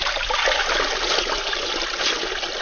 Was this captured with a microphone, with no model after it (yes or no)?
no